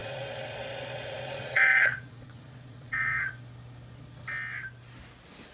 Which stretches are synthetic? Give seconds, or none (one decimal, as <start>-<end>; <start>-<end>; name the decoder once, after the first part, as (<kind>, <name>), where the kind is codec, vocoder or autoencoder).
0.0-3.3 (vocoder, Vocos)